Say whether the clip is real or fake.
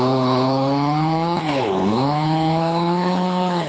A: fake